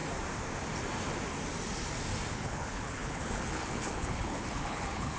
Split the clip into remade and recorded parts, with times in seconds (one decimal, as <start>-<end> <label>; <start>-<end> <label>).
0.0-2.3 recorded; 2.3-5.2 remade